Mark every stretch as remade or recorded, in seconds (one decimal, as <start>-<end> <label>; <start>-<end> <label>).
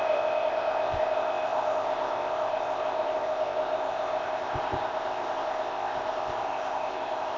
0.0-7.4 remade